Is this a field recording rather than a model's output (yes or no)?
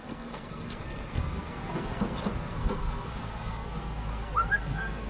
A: no